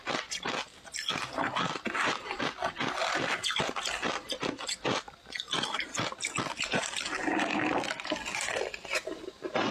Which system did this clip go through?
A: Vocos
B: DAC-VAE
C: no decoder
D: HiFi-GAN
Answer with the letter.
C